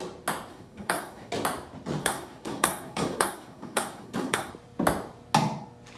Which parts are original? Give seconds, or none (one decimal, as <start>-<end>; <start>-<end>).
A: 0.0-0.5; 1.3-2.0; 4.5-6.0